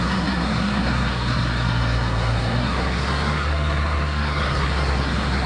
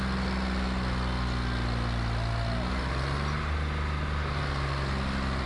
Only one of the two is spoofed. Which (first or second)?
first